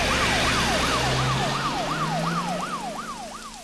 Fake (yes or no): no